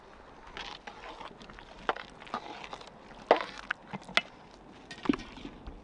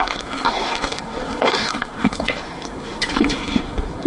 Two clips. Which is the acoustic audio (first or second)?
first